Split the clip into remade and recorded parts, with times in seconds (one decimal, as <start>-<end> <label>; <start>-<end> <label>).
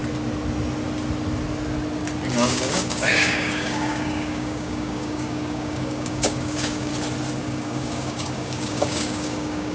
0.0-2.3 recorded; 2.3-6.9 remade; 6.9-7.4 recorded; 7.4-9.7 remade